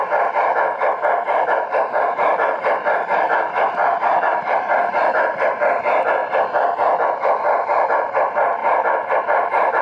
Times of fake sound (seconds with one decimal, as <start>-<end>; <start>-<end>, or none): 0.0-0.5; 1.3-6.2; 7.1-8.6; 9.2-9.8